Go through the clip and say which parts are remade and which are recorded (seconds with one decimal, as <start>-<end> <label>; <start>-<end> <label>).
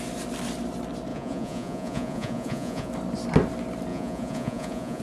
0.0-1.1 recorded; 1.1-2.9 remade; 2.9-3.9 recorded; 3.9-5.0 remade